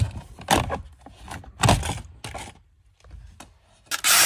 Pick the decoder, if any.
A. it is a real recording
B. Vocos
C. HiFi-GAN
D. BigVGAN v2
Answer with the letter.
A